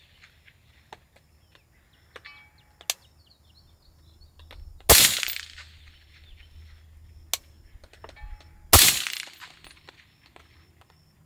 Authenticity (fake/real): real